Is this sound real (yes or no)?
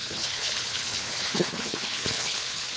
no